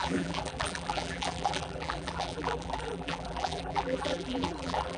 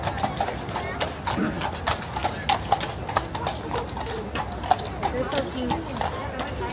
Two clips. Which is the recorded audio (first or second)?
second